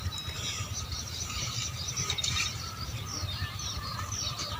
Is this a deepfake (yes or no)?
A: yes